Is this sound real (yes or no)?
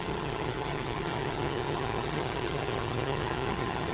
no